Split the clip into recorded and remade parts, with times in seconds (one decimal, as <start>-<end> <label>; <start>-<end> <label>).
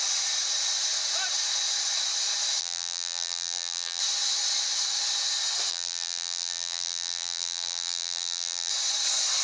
0.0-2.6 recorded; 2.6-4.0 remade; 4.0-5.7 recorded; 5.7-8.7 remade; 8.7-9.4 recorded